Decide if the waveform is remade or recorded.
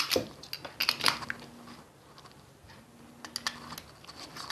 recorded